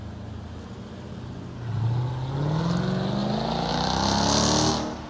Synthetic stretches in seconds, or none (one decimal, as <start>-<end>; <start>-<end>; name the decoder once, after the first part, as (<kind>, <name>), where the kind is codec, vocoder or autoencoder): none